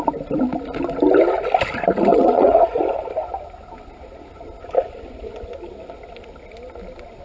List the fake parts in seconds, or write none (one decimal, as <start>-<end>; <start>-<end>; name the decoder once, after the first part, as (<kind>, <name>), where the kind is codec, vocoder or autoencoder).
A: 2.1-2.8 (vocoder, Vocos)